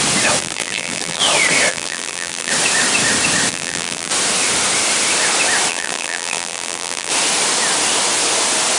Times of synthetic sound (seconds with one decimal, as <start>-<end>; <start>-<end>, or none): 0.4-1.2; 1.7-2.5; 3.5-4.1; 5.7-7.1